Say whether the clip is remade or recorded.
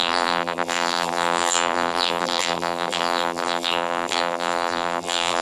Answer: remade